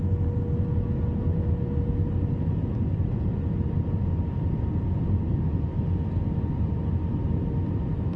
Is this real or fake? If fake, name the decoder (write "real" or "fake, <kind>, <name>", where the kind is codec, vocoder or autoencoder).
real